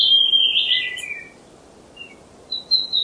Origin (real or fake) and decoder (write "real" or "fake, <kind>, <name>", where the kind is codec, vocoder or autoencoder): real